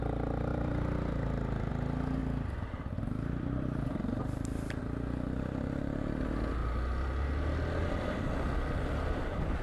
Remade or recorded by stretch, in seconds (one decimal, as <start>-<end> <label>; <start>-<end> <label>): 0.0-0.5 recorded; 0.5-1.7 remade; 1.7-2.2 recorded; 2.2-4.8 remade; 4.8-9.6 recorded